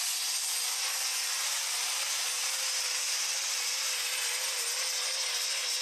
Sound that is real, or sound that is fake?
real